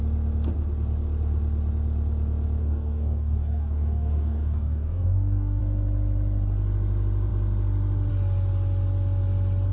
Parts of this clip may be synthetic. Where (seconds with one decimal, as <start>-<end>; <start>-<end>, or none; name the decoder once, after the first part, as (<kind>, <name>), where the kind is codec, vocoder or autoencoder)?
2.6-5.6 (codec, DAC)